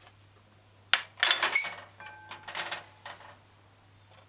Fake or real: real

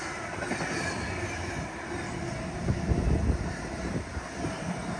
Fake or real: real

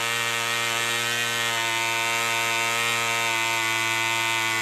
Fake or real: real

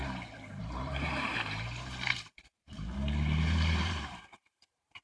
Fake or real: fake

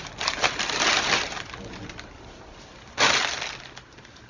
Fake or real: fake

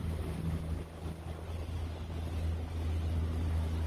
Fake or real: real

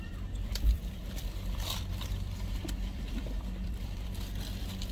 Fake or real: fake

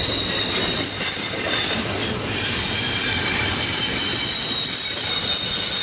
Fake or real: fake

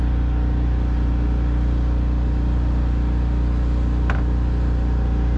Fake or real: real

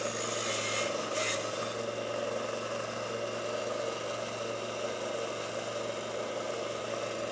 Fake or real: real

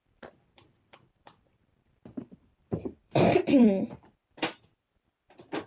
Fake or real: fake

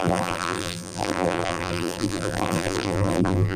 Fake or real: fake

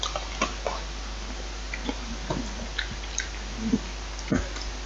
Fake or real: real